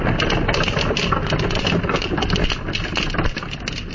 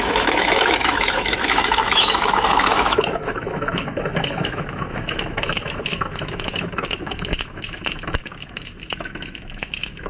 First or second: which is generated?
second